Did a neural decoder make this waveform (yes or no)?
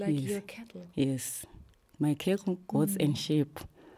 no